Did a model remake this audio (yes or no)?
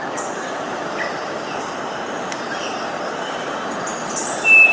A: no